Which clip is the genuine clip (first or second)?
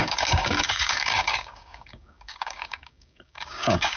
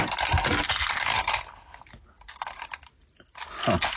second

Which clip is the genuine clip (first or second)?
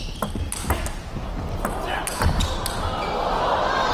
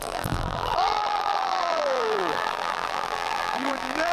first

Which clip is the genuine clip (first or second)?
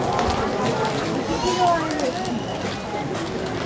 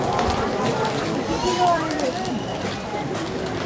first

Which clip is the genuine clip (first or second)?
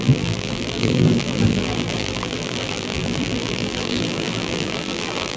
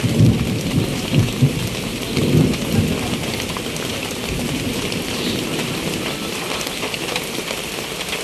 second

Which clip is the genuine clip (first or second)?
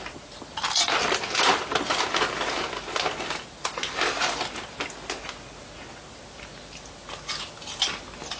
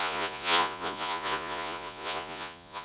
first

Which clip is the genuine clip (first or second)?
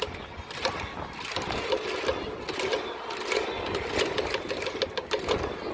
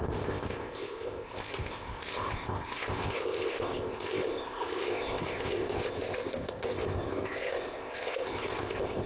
first